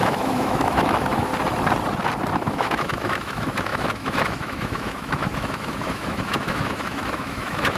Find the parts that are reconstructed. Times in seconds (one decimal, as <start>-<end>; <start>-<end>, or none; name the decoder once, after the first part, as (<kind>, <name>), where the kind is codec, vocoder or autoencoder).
0.0-1.3 (autoencoder, DAC-VAE); 2.3-7.8